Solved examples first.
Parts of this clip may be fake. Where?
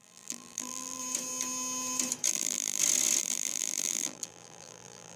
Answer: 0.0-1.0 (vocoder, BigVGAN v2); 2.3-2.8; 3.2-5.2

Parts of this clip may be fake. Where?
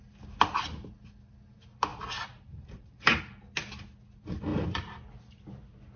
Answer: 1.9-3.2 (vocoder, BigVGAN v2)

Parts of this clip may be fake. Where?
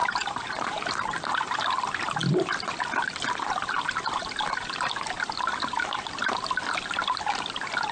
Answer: 0.0-0.9 (vocoder, BigVGAN v2)